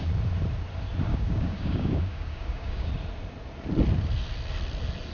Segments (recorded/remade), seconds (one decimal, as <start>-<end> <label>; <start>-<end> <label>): 0.0-1.1 recorded; 1.1-2.9 remade; 2.9-5.1 recorded

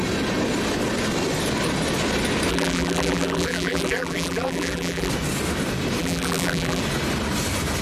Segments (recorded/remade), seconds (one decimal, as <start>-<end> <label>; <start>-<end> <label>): 0.0-2.5 recorded; 2.5-5.1 remade; 5.1-6.0 recorded; 6.0-6.8 remade; 6.8-7.8 recorded

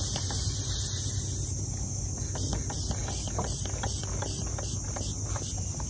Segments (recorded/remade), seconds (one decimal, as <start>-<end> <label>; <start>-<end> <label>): 0.0-5.9 recorded

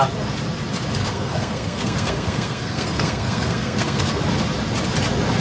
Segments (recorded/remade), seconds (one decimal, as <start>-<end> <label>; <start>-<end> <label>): 0.0-1.0 recorded; 1.0-4.2 remade; 4.2-5.4 recorded

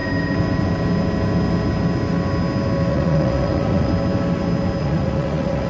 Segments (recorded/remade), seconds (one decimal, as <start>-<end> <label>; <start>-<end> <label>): 0.0-2.9 recorded; 2.9-3.9 remade; 3.9-4.8 recorded; 4.8-5.7 remade

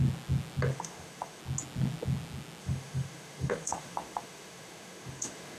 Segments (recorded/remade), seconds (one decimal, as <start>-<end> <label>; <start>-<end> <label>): 0.0-0.7 recorded; 0.7-1.4 remade; 1.4-2.6 recorded; 2.6-5.6 remade